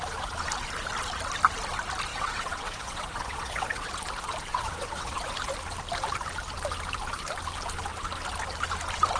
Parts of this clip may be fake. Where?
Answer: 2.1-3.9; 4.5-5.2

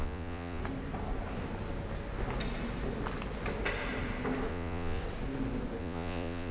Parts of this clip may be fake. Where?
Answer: 0.0-0.6; 4.5-5.0; 5.8-6.5

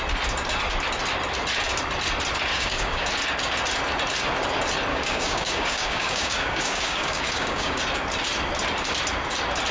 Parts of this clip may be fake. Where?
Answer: 2.5-3.1; 4.9-7.8

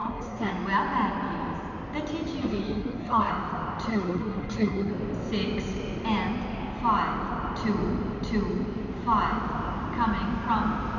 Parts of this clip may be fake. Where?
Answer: 0.0-0.5; 2.4-3.3; 3.9-4.9

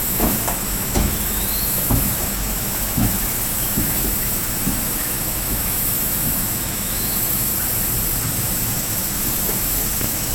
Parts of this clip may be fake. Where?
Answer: 0.0-7.5; 8.4-10.3

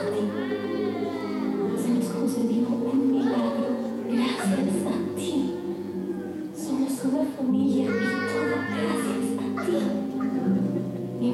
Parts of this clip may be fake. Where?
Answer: 0.0-11.3